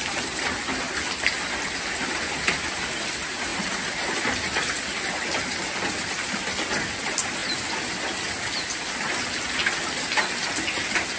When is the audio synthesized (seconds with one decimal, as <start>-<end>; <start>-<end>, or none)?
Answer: none